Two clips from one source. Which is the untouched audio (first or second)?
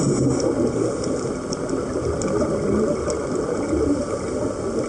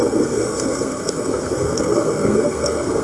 first